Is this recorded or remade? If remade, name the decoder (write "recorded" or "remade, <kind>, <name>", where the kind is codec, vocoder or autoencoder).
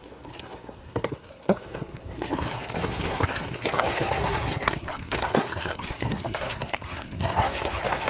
remade, codec, SNAC